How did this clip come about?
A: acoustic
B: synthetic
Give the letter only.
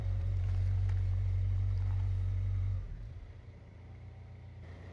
B